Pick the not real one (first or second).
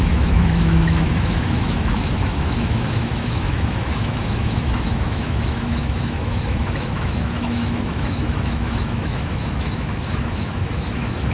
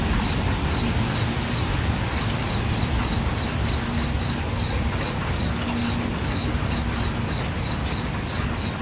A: first